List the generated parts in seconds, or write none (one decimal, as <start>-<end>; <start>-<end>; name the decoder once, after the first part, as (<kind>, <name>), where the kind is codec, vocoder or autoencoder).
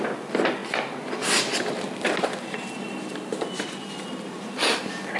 none